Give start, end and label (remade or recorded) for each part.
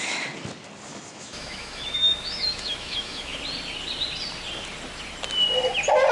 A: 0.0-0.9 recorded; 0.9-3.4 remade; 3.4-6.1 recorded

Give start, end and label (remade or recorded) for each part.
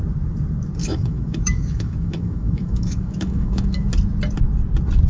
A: 0.0-0.8 recorded; 0.8-3.9 remade; 3.9-5.1 recorded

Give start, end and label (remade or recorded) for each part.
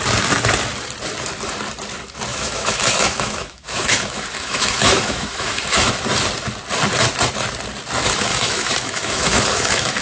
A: 0.0-2.3 recorded; 2.3-5.9 remade; 5.9-8.3 recorded; 8.3-10.0 remade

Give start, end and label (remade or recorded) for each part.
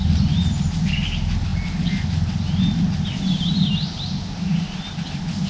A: 0.0-5.5 recorded